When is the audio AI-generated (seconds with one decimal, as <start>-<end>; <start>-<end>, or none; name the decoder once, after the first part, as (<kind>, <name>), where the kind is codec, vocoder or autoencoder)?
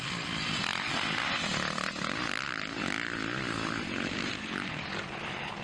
none